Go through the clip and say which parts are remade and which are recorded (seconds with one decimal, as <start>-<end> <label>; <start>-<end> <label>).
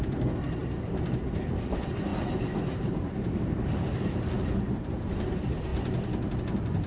0.0-0.6 recorded; 0.6-1.1 remade; 1.1-2.1 recorded; 2.1-5.3 remade; 5.3-6.9 recorded